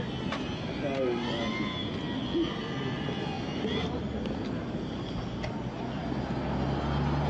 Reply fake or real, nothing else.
real